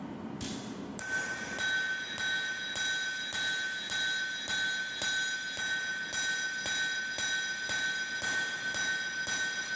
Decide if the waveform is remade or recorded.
recorded